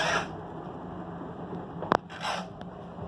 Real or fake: real